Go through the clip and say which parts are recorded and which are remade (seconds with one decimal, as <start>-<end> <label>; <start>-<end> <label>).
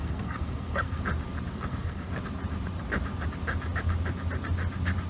0.0-1.0 remade; 1.0-1.5 recorded; 1.5-2.2 remade; 2.2-5.1 recorded